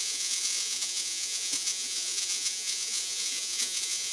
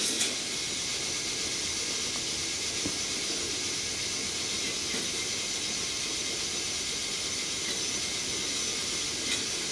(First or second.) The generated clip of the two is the first